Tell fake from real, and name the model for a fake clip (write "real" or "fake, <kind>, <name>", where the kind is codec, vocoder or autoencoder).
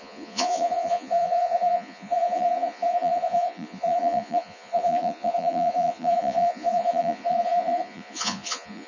fake, vocoder, Vocos